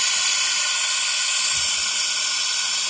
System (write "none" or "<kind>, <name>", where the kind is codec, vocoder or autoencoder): none